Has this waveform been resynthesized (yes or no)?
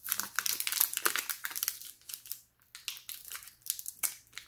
no